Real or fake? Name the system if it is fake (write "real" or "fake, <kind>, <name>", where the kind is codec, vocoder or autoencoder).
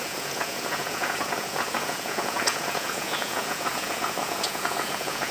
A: fake, vocoder, Vocos